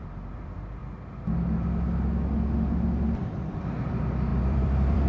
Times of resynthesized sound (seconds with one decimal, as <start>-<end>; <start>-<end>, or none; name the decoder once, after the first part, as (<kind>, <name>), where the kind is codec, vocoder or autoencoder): 0.0-0.8 (vocoder, BigVGAN v2); 3.9-5.1